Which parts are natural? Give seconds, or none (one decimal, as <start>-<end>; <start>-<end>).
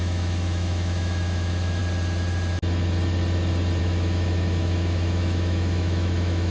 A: 1.8-3.8